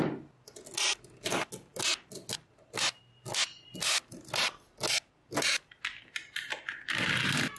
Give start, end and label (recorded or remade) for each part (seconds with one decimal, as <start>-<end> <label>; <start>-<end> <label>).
0.0-7.6 recorded